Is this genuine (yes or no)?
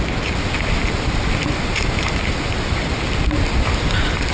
yes